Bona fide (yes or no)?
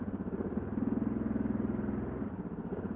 yes